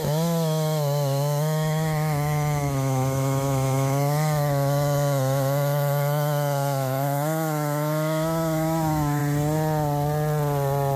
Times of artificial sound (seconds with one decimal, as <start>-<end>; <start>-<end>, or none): 0.0-9.2

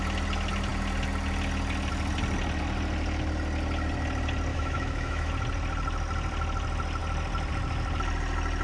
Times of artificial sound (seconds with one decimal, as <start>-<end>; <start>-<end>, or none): 4.5-5.3

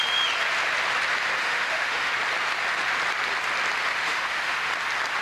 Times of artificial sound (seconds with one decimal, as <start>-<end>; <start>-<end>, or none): 1.4-2.1; 3.9-4.7

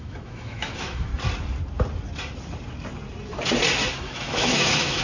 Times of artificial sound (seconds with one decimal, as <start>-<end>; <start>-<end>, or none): 0.0-1.1; 3.9-5.0

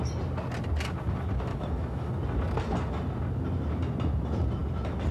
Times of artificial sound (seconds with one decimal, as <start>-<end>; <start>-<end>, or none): 1.5-2.1

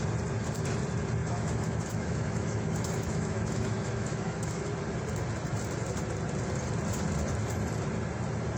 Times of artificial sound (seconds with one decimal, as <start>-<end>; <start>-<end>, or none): 1.2-4.7